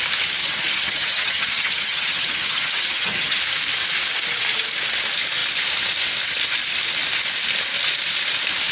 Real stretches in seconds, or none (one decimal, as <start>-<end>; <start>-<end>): 0.0-0.4; 3.4-8.7